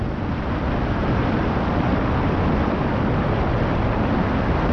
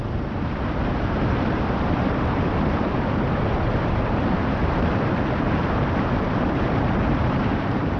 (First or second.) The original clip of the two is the first